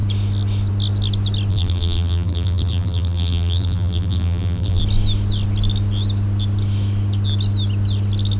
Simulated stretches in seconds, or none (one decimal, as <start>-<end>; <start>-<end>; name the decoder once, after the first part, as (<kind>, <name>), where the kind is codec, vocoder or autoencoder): 1.5-4.8 (vocoder, BigVGAN v2)